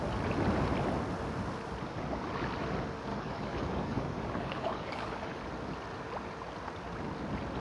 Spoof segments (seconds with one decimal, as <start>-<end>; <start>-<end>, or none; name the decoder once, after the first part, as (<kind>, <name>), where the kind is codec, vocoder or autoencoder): 3.1-5.4 (codec, DAC)